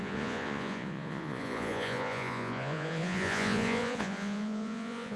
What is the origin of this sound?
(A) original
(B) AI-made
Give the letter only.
B